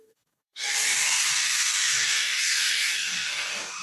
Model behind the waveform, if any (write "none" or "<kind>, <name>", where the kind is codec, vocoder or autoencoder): codec, DAC